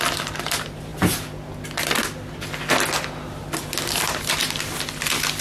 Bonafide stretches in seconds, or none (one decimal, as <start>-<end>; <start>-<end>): none